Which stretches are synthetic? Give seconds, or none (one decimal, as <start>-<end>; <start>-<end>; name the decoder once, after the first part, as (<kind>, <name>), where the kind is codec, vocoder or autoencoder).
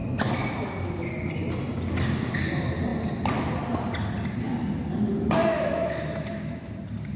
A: 5.5-6.7 (autoencoder, DAC-VAE)